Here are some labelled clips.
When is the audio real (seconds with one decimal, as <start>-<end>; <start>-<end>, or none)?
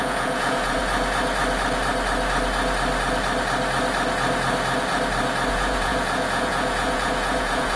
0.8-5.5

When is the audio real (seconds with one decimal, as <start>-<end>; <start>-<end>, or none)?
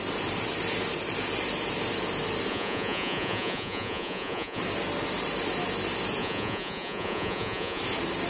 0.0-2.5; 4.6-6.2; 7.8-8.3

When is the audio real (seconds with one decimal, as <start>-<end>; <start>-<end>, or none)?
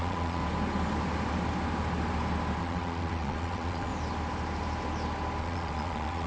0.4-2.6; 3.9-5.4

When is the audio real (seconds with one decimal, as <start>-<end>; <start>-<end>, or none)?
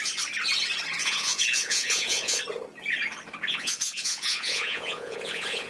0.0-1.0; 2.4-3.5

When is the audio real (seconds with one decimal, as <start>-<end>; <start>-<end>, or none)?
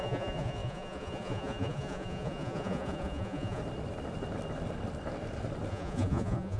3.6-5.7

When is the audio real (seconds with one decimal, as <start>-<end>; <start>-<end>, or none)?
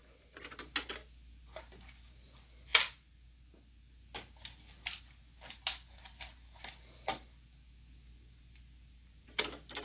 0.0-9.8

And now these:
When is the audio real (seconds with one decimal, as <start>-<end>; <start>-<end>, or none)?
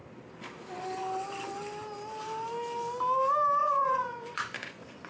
0.0-3.6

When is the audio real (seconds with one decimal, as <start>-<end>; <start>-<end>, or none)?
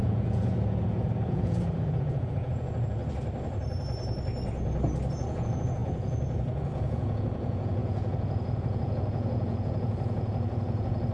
3.0-5.1